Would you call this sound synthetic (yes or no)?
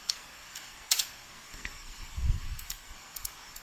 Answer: yes